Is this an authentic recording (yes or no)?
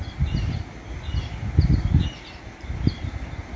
yes